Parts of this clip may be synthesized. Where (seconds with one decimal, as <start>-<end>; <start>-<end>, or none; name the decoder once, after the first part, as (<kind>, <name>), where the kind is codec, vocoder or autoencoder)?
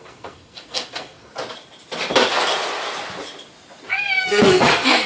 0.0-1.3 (codec, SNAC); 3.9-5.1